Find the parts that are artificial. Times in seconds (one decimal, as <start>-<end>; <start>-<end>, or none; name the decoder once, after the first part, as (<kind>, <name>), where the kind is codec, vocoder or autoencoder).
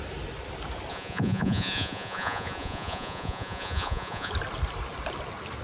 0.9-4.3 (vocoder, Vocos)